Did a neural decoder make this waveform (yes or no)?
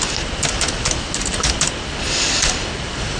no